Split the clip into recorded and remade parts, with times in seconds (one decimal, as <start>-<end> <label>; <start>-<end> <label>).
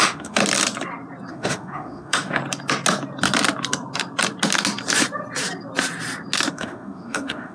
0.0-0.4 remade; 0.4-1.3 recorded; 1.3-2.4 remade; 2.4-6.5 recorded; 6.5-7.5 remade